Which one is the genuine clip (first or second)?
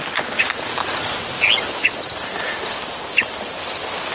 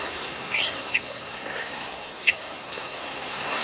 first